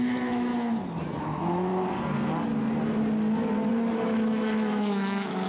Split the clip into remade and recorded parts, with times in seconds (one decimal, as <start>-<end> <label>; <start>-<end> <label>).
0.0-0.5 remade; 0.5-1.2 recorded; 1.2-1.7 remade; 1.7-3.7 recorded; 3.7-5.5 remade

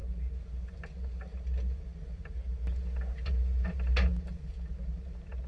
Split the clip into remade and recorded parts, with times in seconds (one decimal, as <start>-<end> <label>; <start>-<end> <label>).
0.0-5.5 recorded